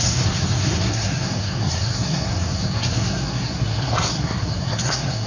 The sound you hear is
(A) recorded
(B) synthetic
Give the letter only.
B